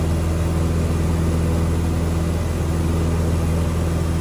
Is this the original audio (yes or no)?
yes